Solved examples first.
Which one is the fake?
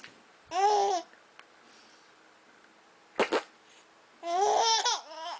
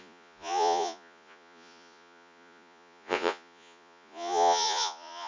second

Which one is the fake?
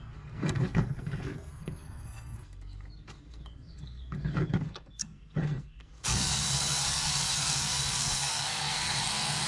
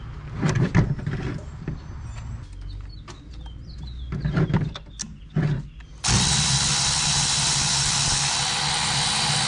first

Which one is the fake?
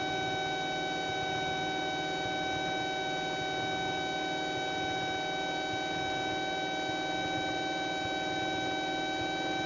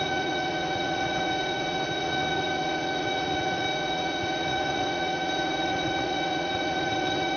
second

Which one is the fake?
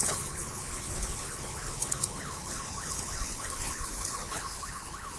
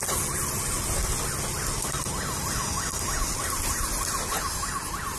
first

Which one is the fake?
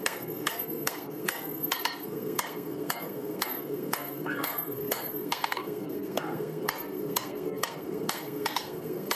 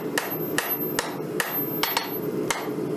first